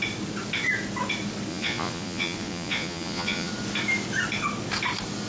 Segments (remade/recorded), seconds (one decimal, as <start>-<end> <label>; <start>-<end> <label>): 0.0-1.5 recorded; 1.5-3.5 remade; 3.5-5.3 recorded